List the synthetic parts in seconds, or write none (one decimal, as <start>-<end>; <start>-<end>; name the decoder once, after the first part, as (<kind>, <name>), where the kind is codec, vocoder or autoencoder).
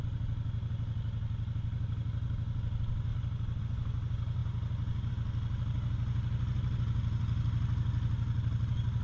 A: none